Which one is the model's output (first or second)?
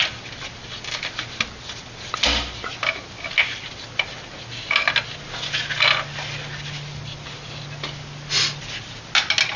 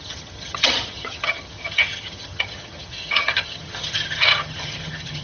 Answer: second